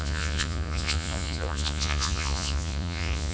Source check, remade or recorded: remade